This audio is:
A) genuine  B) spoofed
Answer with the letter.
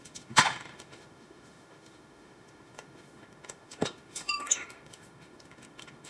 B